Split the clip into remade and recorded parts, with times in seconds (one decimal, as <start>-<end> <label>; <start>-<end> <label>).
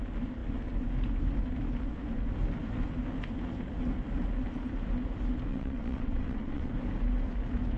0.0-5.5 recorded; 5.5-6.7 remade; 6.7-7.8 recorded